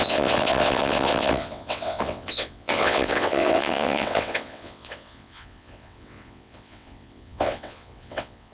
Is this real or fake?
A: fake